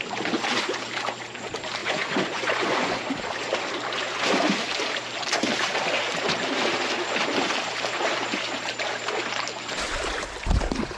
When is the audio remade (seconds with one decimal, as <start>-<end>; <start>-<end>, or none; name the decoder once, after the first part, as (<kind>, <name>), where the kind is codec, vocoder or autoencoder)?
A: 1.8-3.0 (vocoder, Vocos)